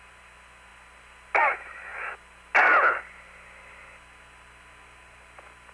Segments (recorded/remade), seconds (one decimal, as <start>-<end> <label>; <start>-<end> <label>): 0.0-5.7 recorded